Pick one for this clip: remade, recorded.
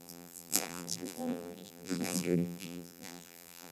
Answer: remade